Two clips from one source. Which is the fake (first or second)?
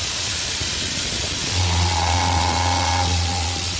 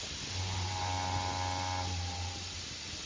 first